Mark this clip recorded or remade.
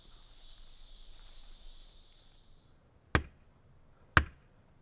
recorded